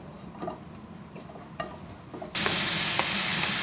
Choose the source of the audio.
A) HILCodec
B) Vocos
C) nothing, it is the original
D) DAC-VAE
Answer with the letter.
C